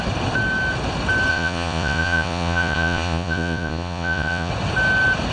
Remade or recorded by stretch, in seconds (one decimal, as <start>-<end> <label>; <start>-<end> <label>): 0.0-1.3 recorded; 1.3-4.5 remade; 4.5-5.3 recorded